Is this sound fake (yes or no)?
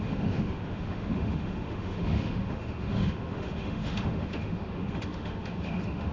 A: yes